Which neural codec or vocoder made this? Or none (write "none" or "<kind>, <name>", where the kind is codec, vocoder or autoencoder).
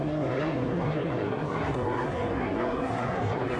codec, SNAC